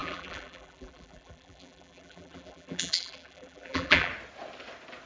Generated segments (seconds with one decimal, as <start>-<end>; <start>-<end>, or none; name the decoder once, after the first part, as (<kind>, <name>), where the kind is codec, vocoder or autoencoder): 0.0-4.1 (vocoder, BigVGAN v2)